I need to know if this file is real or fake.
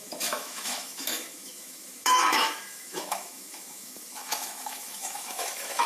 fake